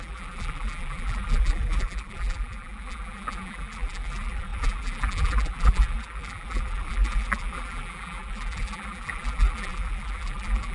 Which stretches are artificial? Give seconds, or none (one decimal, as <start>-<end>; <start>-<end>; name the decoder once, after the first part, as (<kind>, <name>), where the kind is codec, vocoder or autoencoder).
0.0-10.7 (vocoder, BigVGAN v2)